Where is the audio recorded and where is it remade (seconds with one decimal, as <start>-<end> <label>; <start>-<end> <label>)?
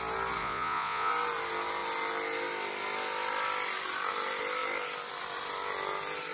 0.0-0.4 recorded; 0.4-1.1 remade; 1.1-6.3 recorded